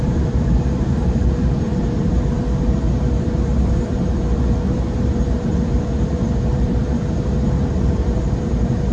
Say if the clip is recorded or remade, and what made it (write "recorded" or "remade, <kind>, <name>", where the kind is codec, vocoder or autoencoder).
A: remade, vocoder, BigVGAN v2